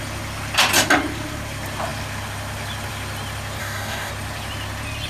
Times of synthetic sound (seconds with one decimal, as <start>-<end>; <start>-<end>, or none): 3.6-4.1